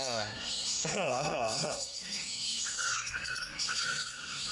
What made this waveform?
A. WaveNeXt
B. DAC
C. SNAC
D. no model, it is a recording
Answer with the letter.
C